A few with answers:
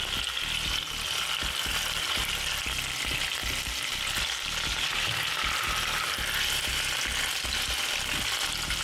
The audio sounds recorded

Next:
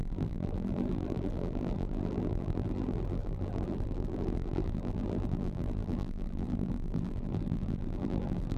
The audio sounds remade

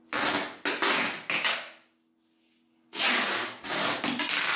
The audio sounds recorded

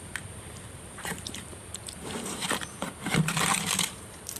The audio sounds remade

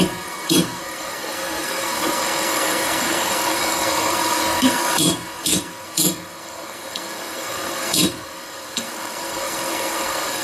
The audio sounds remade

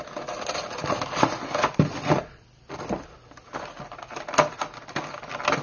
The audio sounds recorded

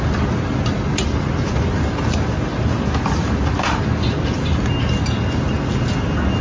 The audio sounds recorded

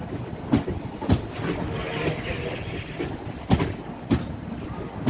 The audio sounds recorded